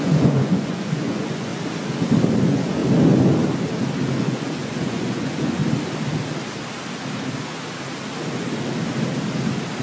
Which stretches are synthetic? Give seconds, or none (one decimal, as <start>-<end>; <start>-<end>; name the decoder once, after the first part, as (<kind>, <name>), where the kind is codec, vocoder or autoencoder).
0.0-1.5 (vocoder, Vocos); 2.4-2.8; 4.2-5.6